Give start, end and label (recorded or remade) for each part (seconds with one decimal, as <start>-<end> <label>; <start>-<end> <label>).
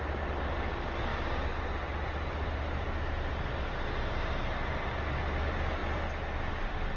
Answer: 0.0-7.0 recorded